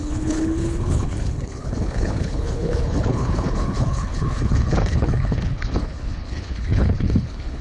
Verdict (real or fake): fake